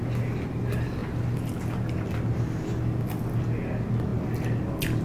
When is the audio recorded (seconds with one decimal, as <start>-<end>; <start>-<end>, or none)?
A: 0.0-5.0